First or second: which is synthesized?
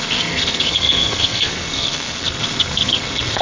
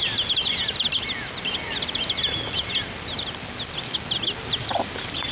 first